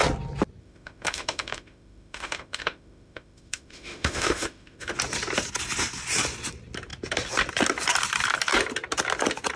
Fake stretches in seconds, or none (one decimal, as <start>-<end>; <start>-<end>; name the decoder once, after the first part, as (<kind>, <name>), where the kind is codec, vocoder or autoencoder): 0.6-4.9 (autoencoder, DAC-VAE)